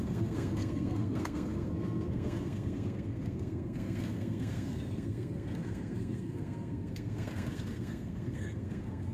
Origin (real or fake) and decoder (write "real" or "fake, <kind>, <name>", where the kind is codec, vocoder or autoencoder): fake, codec, SNAC